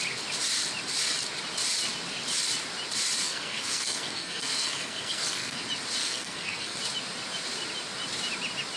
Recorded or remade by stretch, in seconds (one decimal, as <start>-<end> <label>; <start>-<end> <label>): 0.0-3.2 recorded; 3.2-5.6 remade; 5.6-6.0 recorded; 6.0-6.8 remade; 6.8-8.8 recorded